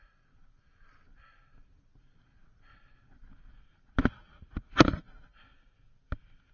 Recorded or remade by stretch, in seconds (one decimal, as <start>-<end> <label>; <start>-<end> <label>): 0.0-6.5 recorded